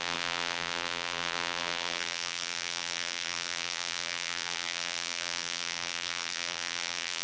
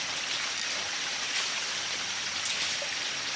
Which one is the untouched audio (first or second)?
second